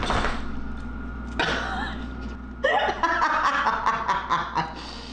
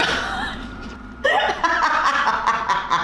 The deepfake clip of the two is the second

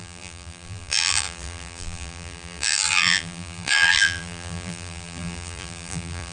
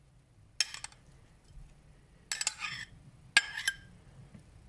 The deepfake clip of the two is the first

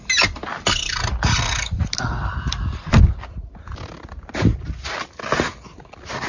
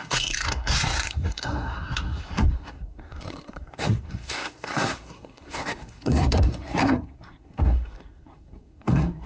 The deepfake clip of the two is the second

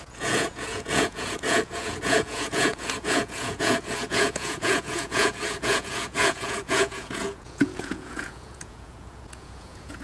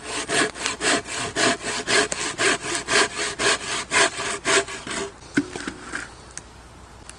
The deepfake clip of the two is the first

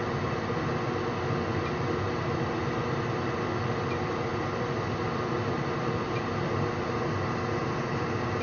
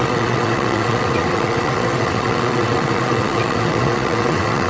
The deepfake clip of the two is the second